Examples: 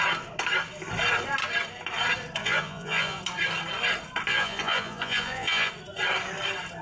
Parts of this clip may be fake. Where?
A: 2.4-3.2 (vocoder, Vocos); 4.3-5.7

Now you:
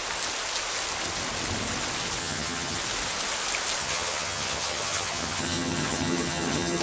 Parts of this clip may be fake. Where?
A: 2.2-2.8 (vocoder, HiFi-GAN); 3.8-6.8